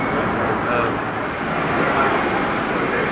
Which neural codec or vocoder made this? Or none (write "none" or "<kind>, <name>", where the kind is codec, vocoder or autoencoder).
none